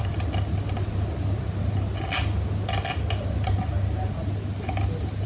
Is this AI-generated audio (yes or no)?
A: no